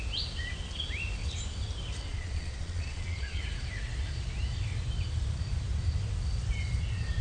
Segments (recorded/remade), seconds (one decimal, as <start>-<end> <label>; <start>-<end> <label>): 0.0-2.1 recorded; 2.1-3.4 remade; 3.4-7.2 recorded